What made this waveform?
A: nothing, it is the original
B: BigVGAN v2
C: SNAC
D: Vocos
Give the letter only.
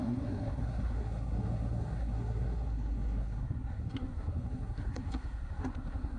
C